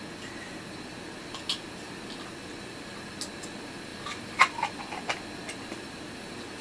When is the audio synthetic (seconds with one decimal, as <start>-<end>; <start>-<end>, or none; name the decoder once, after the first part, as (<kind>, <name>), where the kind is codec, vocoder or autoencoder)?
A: 3.9-4.8 (vocoder, BigVGAN v2)